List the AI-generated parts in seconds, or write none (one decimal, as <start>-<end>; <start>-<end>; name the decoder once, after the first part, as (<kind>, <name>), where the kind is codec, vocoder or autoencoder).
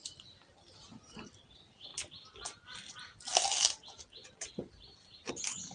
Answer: none